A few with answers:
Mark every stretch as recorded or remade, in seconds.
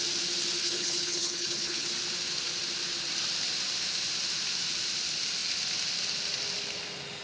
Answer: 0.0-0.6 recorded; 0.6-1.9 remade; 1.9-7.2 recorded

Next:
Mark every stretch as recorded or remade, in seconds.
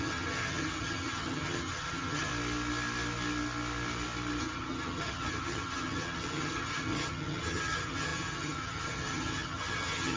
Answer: 0.0-2.3 remade; 2.3-4.4 recorded; 4.4-10.2 remade